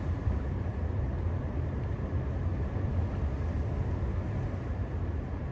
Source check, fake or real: real